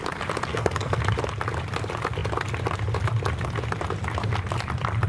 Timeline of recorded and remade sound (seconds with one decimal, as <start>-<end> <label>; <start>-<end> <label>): 0.0-0.5 recorded; 0.5-1.0 remade; 1.0-5.1 recorded